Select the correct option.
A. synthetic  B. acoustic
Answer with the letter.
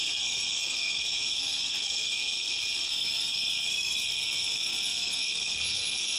A